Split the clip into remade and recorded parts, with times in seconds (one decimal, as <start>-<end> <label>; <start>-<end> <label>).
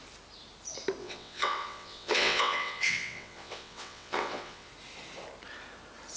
0.0-1.0 recorded; 1.0-4.7 remade; 4.7-6.2 recorded